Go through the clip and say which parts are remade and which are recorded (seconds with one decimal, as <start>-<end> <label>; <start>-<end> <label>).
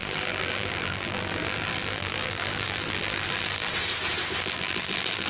0.0-3.7 remade; 3.7-4.4 recorded; 4.4-5.3 remade